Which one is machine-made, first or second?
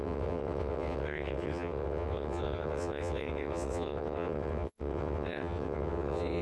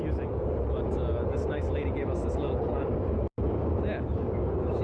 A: first